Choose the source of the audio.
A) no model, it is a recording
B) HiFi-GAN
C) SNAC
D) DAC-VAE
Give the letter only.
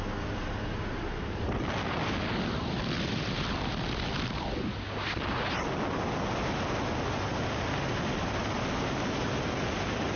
A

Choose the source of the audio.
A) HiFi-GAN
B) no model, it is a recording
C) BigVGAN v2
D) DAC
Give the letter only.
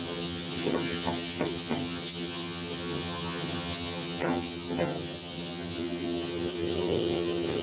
A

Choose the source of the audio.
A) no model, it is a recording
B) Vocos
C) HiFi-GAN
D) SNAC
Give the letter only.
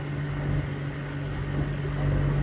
A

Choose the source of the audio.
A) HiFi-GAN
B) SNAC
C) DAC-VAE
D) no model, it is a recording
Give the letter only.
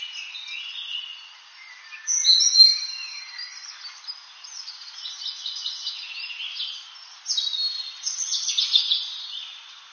D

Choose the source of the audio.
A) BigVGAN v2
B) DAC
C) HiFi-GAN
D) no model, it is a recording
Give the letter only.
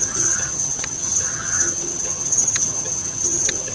C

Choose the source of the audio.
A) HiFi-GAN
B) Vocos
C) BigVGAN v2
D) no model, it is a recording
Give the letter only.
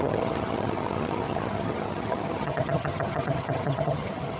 A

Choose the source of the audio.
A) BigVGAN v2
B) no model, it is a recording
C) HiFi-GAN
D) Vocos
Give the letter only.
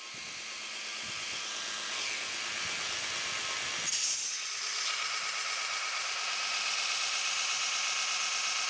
B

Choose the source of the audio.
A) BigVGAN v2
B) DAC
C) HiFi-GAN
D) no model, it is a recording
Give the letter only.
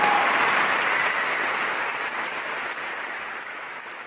D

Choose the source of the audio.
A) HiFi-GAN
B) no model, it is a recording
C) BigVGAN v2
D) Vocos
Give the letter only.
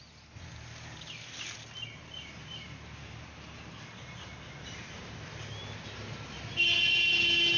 B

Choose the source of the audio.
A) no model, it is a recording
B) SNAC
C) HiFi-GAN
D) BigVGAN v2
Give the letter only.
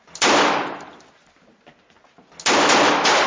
A